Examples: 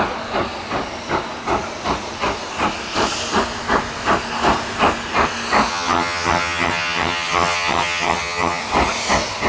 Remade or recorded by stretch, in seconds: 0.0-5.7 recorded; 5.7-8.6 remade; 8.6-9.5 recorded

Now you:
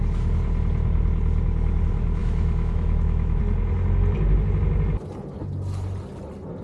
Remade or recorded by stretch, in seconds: 0.0-2.2 recorded; 2.2-3.4 remade; 3.4-6.6 recorded

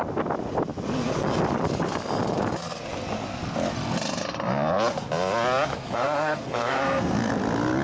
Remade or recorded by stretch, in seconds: 0.0-5.7 recorded; 5.7-7.3 remade; 7.3-7.8 recorded